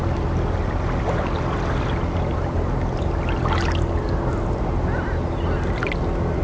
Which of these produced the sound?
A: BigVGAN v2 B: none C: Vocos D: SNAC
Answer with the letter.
B